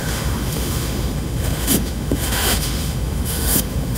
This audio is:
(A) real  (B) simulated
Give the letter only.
B